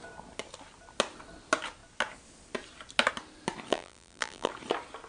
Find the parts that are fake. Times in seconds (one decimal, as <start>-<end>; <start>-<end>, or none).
3.7-4.5